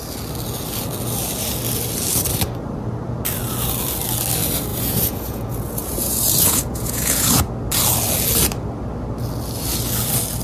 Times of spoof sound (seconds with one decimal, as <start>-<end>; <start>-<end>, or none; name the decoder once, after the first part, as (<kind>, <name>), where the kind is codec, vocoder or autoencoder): 4.7-7.5 (vocoder, Vocos)